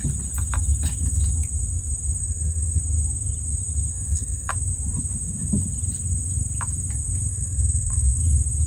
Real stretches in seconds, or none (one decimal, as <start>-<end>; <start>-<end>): 0.0-2.2; 2.8-3.9; 4.5-7.3; 8.2-8.7